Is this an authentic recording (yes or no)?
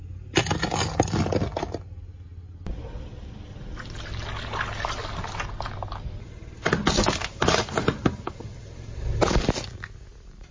yes